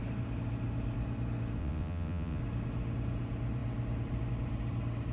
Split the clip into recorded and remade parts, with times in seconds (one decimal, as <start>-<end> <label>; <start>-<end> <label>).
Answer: 0.0-1.6 recorded; 1.6-2.4 remade; 2.4-5.1 recorded